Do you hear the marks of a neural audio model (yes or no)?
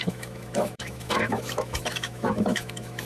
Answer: yes